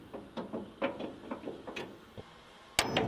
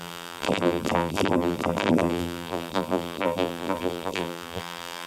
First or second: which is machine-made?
second